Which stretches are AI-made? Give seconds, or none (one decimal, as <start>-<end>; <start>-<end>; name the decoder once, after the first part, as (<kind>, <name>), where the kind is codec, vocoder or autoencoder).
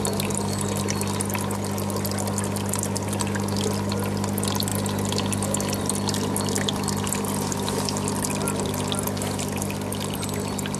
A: none